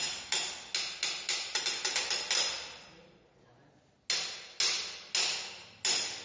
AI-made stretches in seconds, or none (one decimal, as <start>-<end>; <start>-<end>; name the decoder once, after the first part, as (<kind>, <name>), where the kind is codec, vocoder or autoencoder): none